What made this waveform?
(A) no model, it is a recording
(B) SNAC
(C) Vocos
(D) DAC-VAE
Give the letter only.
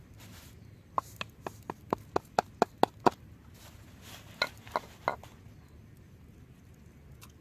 A